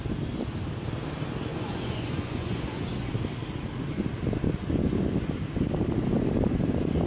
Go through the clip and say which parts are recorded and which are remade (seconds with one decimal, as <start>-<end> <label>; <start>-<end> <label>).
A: 0.0-1.5 recorded; 1.5-3.1 remade; 3.1-7.1 recorded

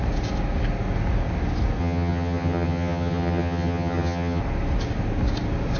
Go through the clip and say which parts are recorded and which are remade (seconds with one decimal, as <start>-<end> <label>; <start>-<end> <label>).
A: 0.0-1.8 recorded; 1.8-4.4 remade; 4.4-5.8 recorded

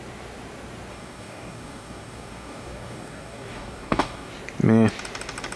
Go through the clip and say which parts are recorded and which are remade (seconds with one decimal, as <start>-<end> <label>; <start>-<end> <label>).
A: 0.0-0.9 recorded; 0.9-4.3 remade; 4.3-5.6 recorded